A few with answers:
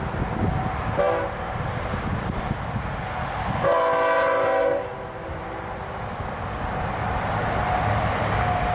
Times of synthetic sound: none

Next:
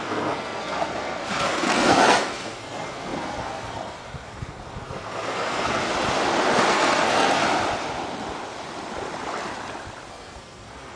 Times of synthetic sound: 0.0-5.8 (codec, SNAC); 6.7-7.4; 10.1-11.0